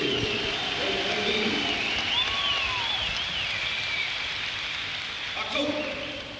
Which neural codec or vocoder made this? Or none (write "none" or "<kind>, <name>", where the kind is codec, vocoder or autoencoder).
vocoder, BigVGAN v2